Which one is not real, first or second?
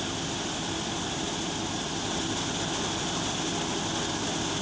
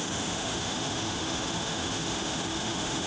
second